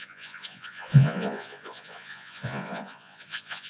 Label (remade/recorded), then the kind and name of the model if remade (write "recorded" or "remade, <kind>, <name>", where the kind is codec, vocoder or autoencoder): remade, vocoder, Vocos